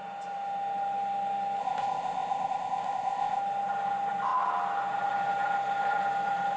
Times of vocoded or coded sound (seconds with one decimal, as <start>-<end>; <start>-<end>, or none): 1.6-3.4